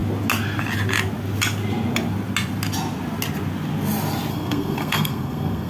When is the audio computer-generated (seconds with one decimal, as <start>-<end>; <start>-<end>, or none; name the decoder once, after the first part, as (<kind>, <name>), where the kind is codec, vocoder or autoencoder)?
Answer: 4.3-5.7 (codec, SNAC)